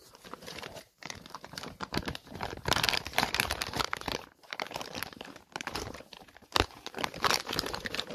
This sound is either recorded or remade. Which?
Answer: remade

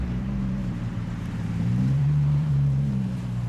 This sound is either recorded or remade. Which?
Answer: remade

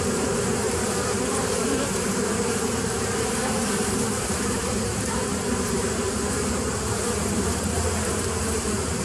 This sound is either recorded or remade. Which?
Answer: remade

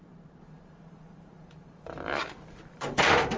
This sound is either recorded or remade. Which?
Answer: remade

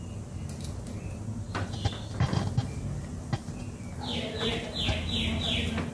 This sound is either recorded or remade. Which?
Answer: recorded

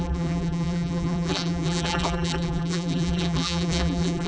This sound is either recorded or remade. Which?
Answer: remade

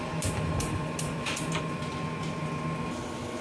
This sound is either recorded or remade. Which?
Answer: recorded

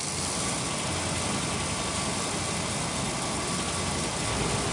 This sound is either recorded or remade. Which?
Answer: recorded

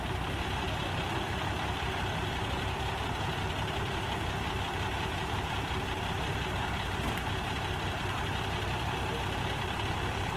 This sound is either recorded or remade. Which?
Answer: remade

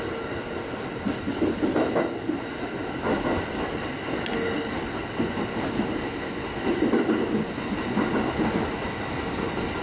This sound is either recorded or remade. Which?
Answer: recorded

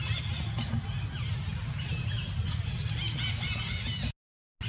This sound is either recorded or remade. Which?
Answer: recorded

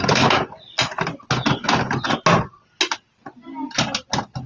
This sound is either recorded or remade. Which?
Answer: recorded